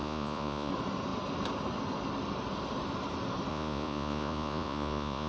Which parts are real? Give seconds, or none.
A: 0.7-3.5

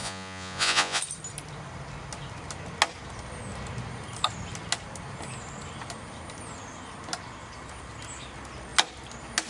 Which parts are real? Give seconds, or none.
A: 1.0-9.5

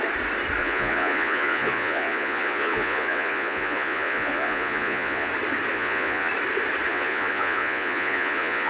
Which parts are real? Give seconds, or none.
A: 0.0-0.6; 5.3-5.7; 6.3-6.9

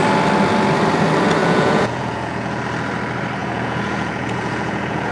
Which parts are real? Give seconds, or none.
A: 0.0-1.4; 2.6-3.4

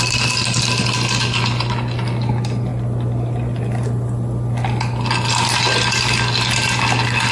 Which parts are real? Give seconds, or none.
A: 0.0-7.3

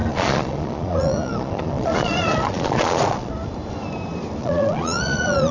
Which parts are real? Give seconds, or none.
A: 3.3-4.4

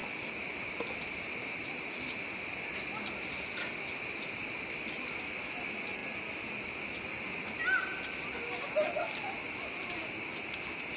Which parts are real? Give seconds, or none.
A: 0.0-11.0